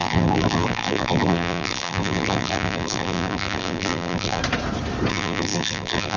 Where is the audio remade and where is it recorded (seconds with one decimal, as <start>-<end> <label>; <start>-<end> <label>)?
0.0-4.4 remade; 4.4-5.1 recorded; 5.1-6.2 remade